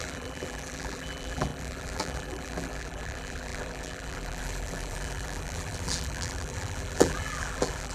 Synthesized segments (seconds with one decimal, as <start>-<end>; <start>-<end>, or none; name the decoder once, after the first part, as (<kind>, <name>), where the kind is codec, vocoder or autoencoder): 0.0-7.9 (vocoder, BigVGAN v2)